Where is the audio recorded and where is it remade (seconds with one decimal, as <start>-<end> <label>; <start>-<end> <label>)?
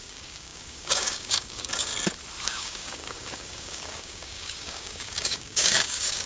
0.0-1.9 remade; 1.9-2.4 recorded; 2.4-6.3 remade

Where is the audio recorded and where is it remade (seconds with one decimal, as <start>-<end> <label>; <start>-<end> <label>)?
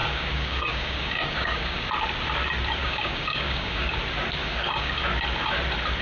0.0-1.9 remade; 1.9-2.8 recorded; 2.8-4.0 remade; 4.0-4.4 recorded; 4.4-4.9 remade; 4.9-6.0 recorded